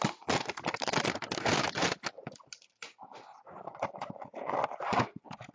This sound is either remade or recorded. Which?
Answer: recorded